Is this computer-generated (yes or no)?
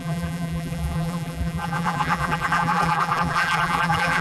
yes